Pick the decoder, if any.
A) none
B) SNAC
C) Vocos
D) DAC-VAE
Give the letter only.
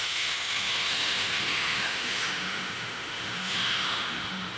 D